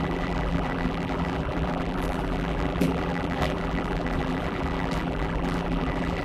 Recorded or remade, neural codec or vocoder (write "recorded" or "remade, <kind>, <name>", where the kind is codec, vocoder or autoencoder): remade, vocoder, BigVGAN v2